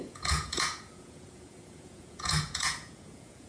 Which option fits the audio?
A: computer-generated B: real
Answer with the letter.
A